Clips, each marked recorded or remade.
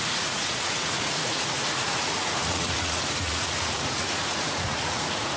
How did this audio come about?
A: remade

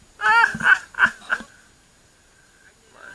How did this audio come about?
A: recorded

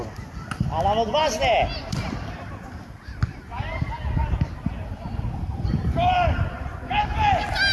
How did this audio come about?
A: recorded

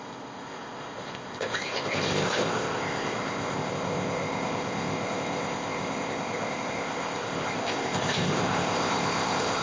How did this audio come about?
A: remade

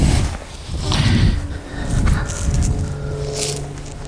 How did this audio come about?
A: recorded